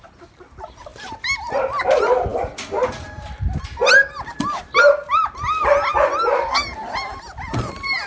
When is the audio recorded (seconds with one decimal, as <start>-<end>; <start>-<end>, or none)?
0.0-8.1